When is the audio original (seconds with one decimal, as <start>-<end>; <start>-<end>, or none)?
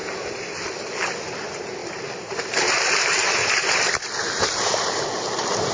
1.1-3.4; 5.0-5.7